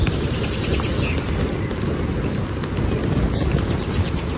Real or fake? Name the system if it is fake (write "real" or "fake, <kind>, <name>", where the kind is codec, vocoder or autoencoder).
real